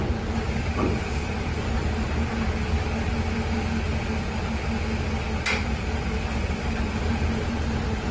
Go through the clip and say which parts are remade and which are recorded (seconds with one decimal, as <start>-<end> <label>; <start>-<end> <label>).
0.0-2.3 remade; 2.3-5.5 recorded; 5.5-8.1 remade